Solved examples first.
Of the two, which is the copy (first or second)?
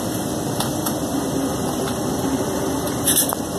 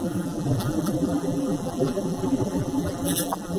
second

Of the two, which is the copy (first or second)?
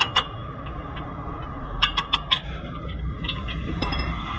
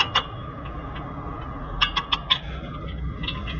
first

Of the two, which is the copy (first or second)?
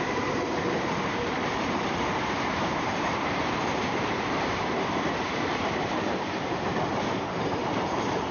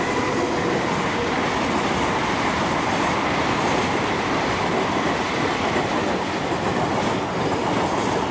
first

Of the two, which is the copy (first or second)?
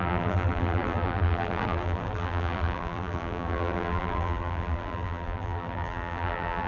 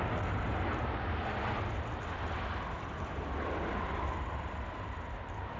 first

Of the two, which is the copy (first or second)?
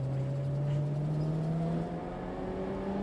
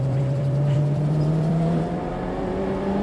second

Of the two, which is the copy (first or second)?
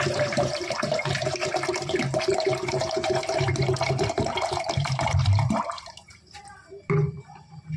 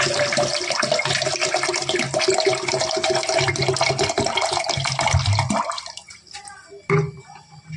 first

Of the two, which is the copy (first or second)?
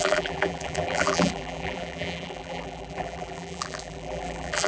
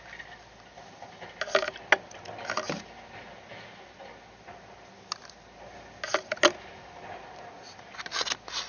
first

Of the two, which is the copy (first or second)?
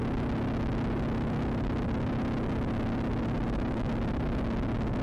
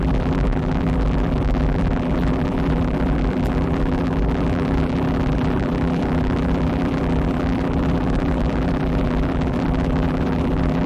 second